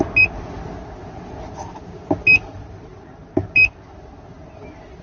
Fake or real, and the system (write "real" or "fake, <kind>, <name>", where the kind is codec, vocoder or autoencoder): real